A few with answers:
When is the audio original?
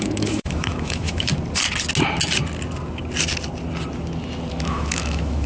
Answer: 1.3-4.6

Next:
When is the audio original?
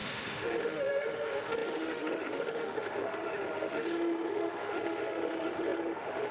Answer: none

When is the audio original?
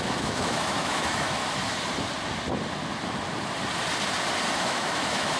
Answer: 1.4-4.6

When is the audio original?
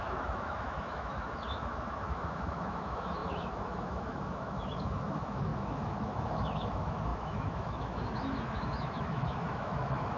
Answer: none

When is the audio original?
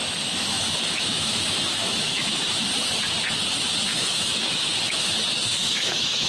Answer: 2.6-3.9; 5.1-5.5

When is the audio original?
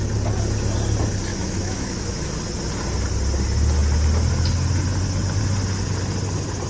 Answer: 0.0-1.3; 2.3-6.7